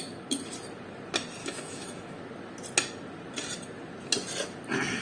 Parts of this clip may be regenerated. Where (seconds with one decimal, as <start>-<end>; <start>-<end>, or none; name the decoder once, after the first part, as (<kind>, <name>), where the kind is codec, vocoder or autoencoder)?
1.4-2.2 (autoencoder, DAC-VAE)